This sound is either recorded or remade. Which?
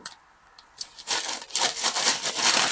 recorded